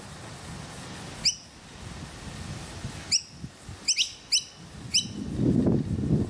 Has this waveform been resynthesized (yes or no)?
no